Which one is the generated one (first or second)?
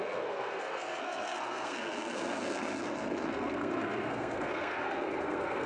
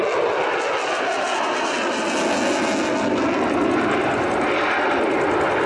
first